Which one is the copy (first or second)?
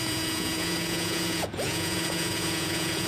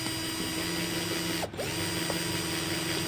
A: first